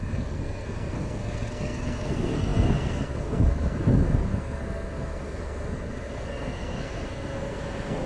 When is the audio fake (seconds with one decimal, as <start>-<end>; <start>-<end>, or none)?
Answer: 0.0-8.1